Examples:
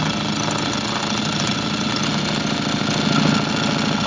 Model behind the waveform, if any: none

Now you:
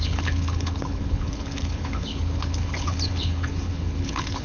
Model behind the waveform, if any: codec, HILCodec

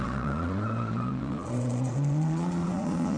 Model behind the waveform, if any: vocoder, Vocos